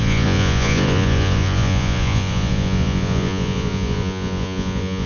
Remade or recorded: remade